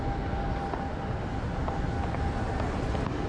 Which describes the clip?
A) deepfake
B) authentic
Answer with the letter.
B